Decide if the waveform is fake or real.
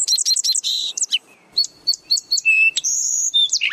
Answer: fake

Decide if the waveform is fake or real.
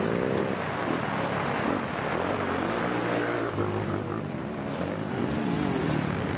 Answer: real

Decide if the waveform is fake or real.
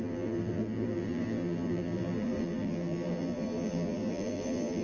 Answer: fake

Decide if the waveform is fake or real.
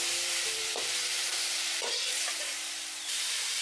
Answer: fake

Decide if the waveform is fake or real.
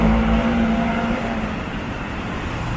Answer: fake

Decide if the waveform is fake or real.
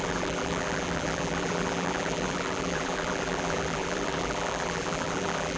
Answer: fake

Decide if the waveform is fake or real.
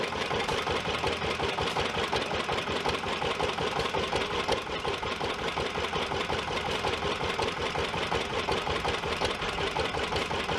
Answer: real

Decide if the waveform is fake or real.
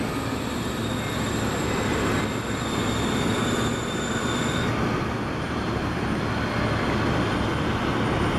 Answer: real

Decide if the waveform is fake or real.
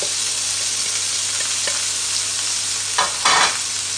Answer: real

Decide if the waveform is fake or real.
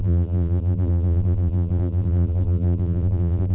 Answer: fake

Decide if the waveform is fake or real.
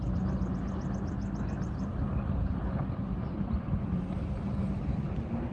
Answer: real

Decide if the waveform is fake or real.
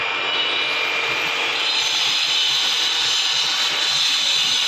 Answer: real